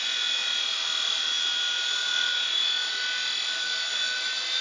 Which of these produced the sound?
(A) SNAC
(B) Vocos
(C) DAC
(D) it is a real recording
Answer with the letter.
D